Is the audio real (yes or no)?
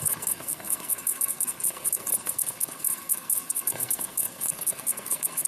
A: no